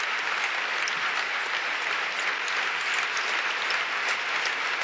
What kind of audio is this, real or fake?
real